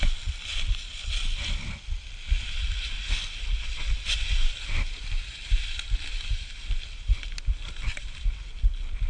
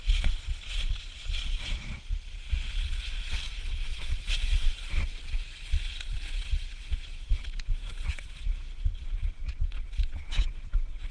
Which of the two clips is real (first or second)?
first